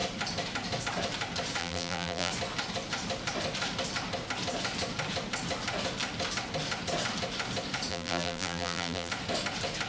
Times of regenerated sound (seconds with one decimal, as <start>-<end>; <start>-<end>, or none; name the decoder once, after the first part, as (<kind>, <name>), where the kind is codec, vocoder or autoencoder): 1.6-2.3 (vocoder, BigVGAN v2); 7.9-9.1